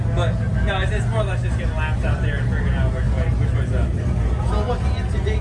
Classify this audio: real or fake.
real